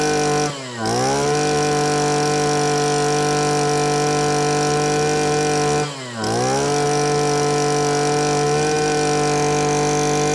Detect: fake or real real